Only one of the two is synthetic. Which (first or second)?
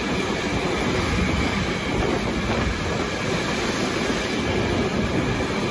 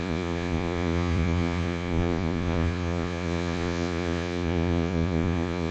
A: second